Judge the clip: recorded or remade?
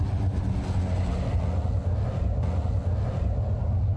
recorded